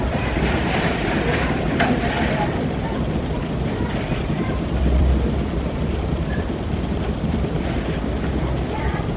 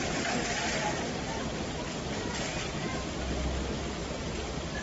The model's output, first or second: first